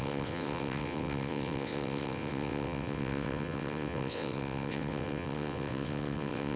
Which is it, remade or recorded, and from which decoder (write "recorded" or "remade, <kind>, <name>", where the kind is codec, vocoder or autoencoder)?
remade, vocoder, WaveNeXt